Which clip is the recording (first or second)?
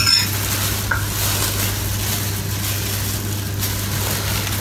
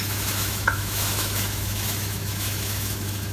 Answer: first